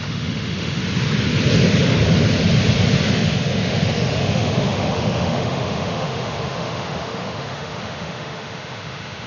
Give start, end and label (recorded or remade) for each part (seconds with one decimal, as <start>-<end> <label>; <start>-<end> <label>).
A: 0.0-0.8 remade; 0.8-3.1 recorded; 3.1-9.3 remade